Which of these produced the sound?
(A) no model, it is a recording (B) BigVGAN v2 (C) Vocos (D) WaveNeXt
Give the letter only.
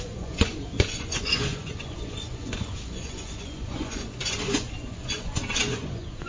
C